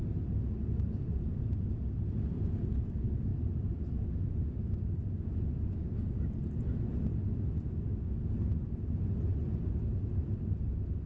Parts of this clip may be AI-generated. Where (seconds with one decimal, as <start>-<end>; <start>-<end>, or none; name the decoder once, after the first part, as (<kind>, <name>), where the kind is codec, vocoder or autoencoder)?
none